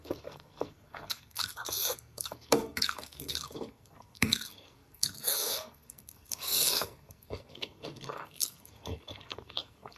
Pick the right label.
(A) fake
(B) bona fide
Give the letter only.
A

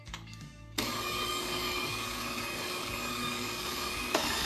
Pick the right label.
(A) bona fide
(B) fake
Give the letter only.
B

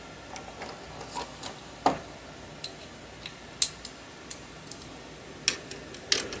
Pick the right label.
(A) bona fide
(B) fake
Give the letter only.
A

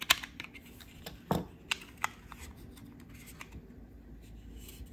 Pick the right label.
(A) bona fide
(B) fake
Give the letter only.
A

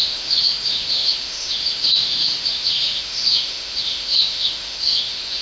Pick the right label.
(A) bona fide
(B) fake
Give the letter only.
B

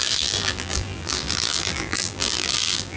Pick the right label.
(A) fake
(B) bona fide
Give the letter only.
A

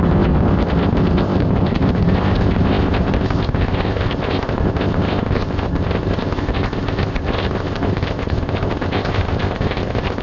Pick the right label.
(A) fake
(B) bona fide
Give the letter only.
A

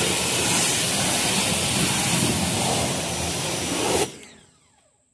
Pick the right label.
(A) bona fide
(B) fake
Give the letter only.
A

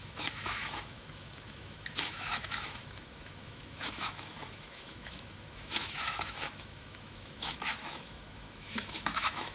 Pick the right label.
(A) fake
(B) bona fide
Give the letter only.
A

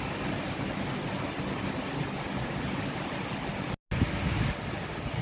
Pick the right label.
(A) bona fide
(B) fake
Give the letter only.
A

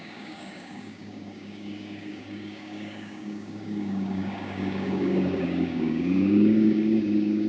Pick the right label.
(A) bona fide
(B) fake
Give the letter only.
B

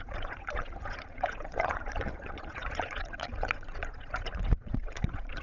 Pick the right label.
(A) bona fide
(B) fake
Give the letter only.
B